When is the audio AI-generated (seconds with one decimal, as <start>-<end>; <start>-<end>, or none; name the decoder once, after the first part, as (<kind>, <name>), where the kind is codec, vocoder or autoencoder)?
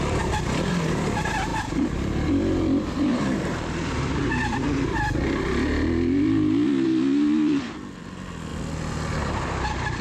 0.0-8.5 (vocoder, BigVGAN v2); 9.2-10.0